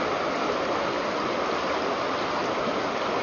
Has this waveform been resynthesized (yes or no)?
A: no